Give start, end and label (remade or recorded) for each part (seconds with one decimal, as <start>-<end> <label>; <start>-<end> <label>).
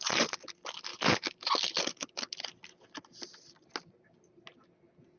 0.0-5.2 recorded